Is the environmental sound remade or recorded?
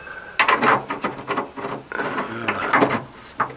recorded